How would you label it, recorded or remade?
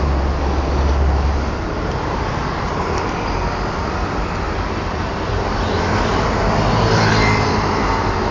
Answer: recorded